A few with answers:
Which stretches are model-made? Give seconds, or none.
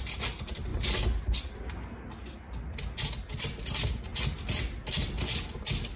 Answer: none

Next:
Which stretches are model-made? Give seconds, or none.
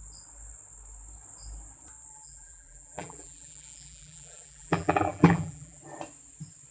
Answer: 2.1-5.8